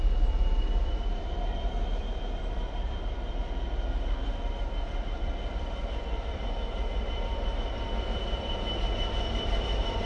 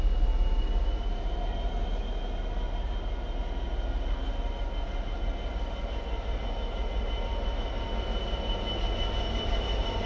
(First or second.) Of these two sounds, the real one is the second